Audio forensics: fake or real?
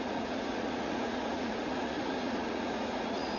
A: fake